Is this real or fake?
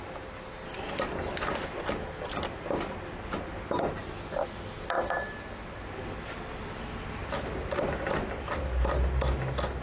real